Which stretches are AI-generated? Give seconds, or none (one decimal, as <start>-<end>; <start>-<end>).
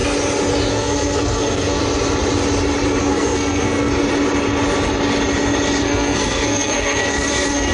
0.7-1.8; 3.0-3.9; 5.8-7.7